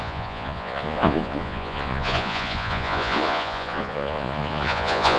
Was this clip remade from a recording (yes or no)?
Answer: yes